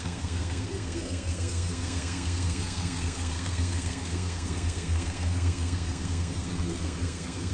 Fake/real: fake